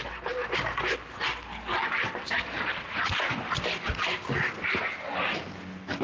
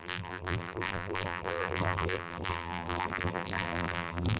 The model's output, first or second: second